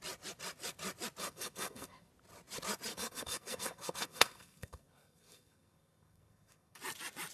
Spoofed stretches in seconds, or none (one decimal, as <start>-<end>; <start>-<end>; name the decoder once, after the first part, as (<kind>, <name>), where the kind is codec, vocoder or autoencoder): 1.2-2.1 (codec, SNAC); 2.9-6.8